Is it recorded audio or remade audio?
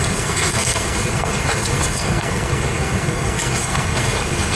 remade